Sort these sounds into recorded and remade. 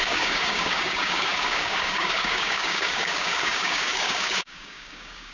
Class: remade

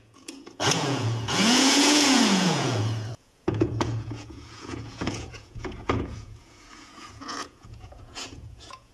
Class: remade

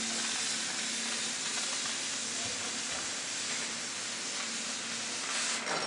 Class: recorded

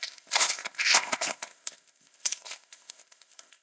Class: remade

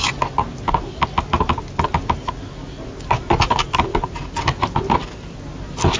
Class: recorded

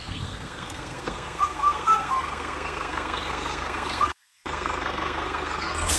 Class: remade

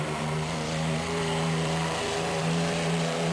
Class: remade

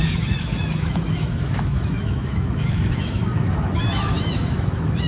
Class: remade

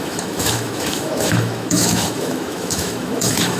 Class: remade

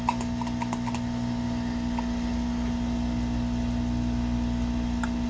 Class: recorded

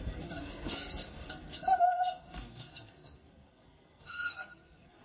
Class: remade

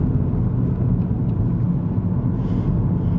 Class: recorded